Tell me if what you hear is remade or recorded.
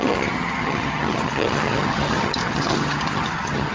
remade